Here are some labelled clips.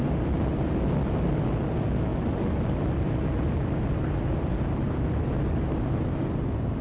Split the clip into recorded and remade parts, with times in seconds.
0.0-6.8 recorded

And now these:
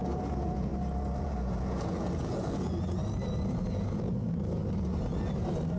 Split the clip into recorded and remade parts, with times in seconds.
0.0-0.7 remade; 0.7-1.2 recorded; 1.2-3.0 remade; 3.0-3.6 recorded; 3.6-4.6 remade; 4.6-5.8 recorded

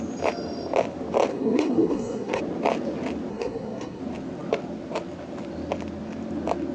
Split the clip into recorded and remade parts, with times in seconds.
0.0-1.3 recorded; 1.3-2.4 remade; 2.4-3.3 recorded; 3.3-4.0 remade; 4.0-6.7 recorded

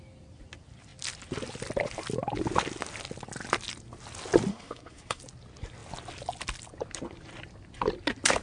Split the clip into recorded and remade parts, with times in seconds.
0.0-4.5 recorded; 4.5-5.2 remade; 5.2-8.4 recorded